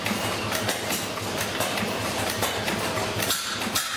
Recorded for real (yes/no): yes